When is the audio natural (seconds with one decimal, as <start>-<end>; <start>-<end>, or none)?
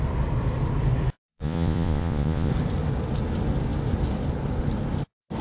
0.0-1.3; 2.5-5.4